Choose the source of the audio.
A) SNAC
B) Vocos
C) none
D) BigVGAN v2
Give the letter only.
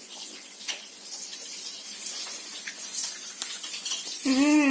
B